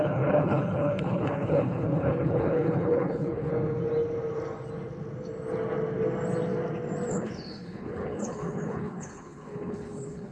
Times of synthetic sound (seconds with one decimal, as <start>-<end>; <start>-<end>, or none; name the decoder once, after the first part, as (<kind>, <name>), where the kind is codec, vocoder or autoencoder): 0.0-3.5 (codec, HILCodec); 7.1-10.3